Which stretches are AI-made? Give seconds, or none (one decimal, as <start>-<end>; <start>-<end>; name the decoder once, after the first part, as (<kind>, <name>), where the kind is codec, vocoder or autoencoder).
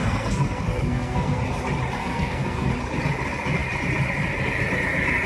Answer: 0.0-1.4 (codec, SNAC); 2.0-2.7